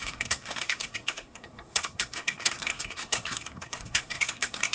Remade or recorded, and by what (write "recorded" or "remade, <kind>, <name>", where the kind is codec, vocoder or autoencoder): remade, codec, SNAC